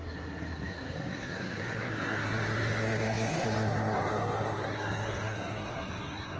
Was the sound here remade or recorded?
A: remade